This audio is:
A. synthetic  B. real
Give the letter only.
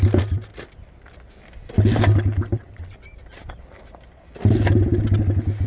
B